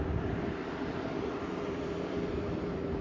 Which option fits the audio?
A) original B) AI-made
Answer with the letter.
B